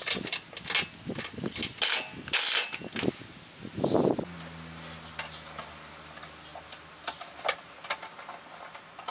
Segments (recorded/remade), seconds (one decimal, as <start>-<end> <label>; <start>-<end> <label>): 0.0-9.1 recorded